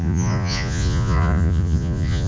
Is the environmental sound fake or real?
fake